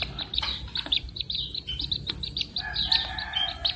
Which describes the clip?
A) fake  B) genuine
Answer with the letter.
B